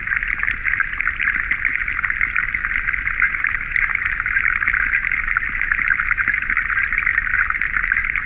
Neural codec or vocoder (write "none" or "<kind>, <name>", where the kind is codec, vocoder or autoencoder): none